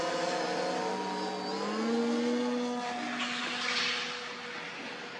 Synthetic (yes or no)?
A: no